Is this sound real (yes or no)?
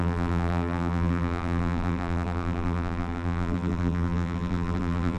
no